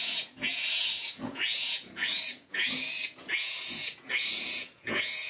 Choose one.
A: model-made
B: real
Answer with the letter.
A